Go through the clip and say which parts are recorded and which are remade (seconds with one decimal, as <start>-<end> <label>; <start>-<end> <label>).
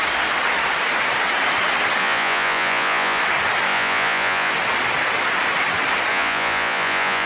0.0-2.0 recorded; 2.0-3.2 remade; 3.2-3.7 recorded; 3.7-4.5 remade; 4.5-6.1 recorded; 6.1-7.3 remade